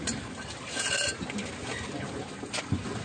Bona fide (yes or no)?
yes